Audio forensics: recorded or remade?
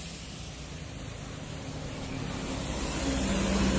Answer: recorded